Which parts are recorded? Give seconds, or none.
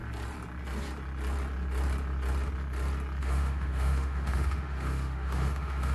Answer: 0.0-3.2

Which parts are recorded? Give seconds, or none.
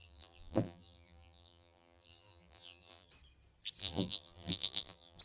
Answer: 3.1-3.8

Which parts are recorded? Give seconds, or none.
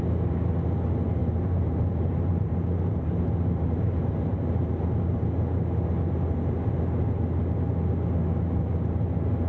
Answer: 0.0-1.2; 5.2-9.5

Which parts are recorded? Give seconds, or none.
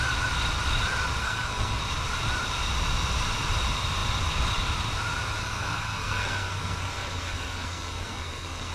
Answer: 0.0-1.2; 1.8-5.4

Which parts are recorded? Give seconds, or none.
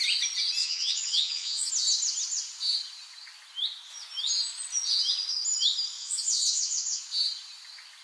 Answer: 0.0-0.6; 1.7-6.0; 7.0-8.0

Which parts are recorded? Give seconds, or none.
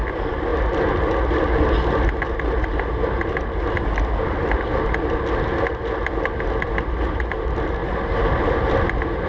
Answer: 0.0-9.3